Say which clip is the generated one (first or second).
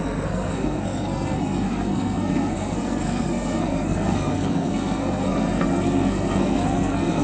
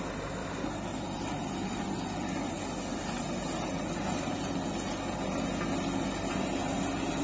first